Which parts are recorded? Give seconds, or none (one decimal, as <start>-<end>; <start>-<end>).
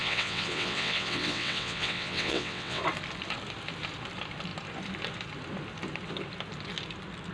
2.8-7.3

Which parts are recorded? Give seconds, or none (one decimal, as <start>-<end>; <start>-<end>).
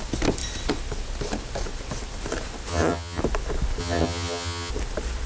0.0-2.7; 3.2-3.8; 4.7-5.3